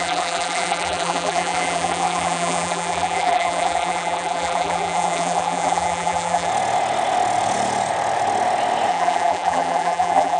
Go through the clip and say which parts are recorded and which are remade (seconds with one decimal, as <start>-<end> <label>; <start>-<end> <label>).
0.0-6.5 remade; 6.5-8.9 recorded; 8.9-10.4 remade